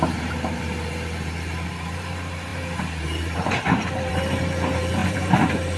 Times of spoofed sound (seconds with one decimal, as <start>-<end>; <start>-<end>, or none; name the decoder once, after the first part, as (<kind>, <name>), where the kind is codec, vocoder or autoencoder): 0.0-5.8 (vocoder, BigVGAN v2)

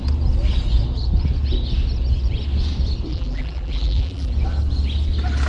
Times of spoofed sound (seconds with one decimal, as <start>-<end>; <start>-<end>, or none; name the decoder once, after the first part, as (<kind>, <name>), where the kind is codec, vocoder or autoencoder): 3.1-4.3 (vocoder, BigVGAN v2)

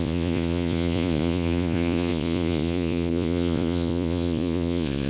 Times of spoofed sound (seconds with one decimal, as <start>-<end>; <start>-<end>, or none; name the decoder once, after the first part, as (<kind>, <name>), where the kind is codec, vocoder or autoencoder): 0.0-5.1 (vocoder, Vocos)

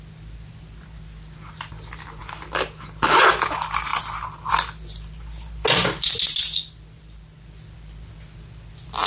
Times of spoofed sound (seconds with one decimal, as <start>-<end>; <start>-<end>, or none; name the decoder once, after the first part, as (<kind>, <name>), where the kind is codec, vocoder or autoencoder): none

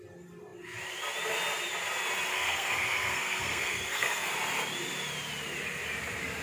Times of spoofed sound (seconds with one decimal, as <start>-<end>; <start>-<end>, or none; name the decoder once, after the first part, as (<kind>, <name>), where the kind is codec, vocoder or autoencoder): 2.3-4.3 (codec, SNAC)

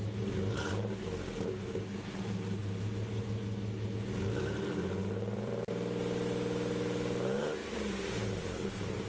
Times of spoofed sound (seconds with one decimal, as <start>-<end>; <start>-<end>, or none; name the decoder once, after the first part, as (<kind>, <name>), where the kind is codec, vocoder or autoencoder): 5.0-5.7 (vocoder, BigVGAN v2); 7.6-8.6

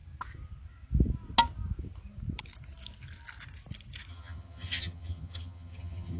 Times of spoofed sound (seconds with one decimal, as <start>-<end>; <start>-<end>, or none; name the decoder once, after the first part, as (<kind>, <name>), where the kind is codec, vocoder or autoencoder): 4.1-6.2 (vocoder, HiFi-GAN)